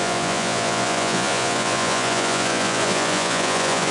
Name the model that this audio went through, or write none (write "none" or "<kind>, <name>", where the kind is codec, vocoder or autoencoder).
vocoder, Vocos